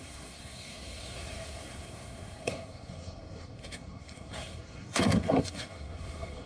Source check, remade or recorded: remade